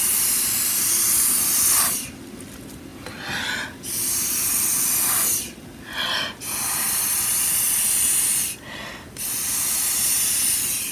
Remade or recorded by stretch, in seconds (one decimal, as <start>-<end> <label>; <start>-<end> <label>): 0.0-10.9 recorded